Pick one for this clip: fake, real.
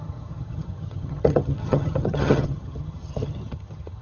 fake